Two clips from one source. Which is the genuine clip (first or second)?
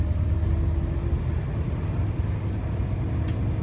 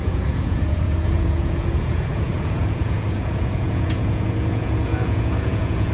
first